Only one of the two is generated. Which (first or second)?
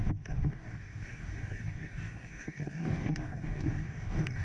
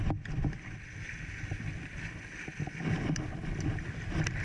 first